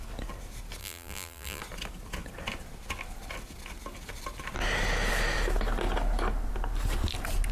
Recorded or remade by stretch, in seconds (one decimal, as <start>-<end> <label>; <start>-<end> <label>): 0.0-0.8 recorded; 0.8-1.6 remade; 1.6-7.5 recorded